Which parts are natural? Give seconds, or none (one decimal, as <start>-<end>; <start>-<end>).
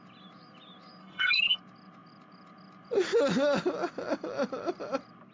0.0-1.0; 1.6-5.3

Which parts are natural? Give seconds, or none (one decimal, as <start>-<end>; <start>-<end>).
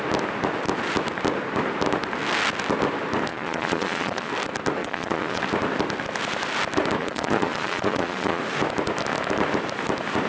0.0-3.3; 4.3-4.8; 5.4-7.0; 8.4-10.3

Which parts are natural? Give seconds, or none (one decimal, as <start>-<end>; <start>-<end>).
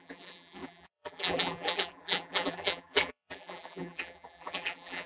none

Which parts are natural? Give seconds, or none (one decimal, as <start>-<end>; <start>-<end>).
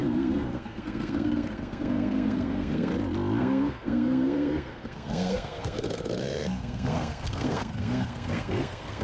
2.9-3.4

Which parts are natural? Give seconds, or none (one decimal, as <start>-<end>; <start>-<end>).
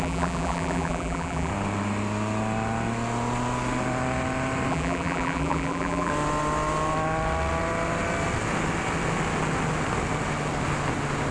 1.5-4.7; 6.1-11.3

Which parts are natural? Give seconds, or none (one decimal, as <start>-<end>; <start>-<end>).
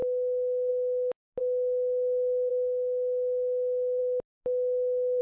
0.0-5.2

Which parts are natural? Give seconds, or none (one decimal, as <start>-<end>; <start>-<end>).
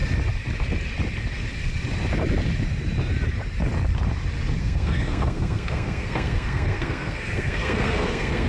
0.0-4.6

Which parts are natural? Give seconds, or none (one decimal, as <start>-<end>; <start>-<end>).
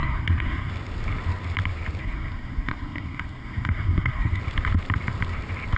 0.7-2.0; 4.4-5.8